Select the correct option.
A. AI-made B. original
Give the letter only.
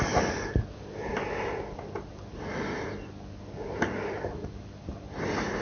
B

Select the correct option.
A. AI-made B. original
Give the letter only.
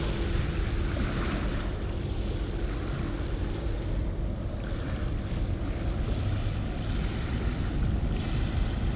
B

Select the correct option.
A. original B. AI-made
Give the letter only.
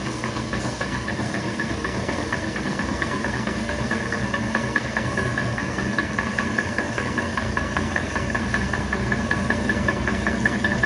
B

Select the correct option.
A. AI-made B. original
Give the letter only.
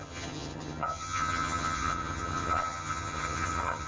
A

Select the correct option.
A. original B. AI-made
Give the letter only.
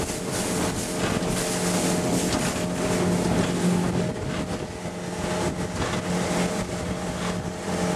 A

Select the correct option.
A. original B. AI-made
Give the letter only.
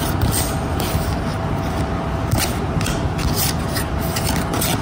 A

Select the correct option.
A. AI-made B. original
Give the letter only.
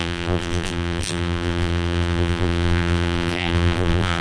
A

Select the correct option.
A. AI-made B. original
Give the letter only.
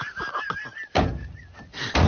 B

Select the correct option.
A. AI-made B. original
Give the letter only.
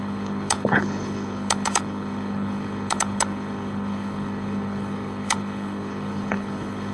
A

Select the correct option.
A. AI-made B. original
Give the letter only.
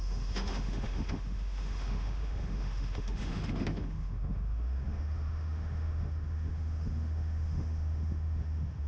A